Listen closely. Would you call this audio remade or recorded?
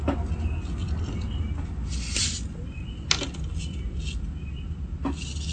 recorded